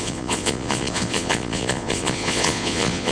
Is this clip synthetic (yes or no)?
yes